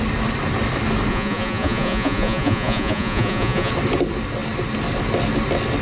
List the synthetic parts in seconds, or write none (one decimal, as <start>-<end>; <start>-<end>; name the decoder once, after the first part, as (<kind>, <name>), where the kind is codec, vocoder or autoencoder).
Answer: 1.1-3.7 (vocoder, Vocos)